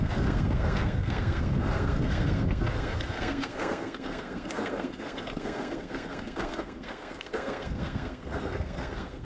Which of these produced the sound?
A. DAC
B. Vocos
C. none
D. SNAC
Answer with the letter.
D